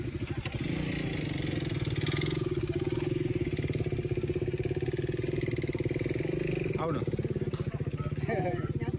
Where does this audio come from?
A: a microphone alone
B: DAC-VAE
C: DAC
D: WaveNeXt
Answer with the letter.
A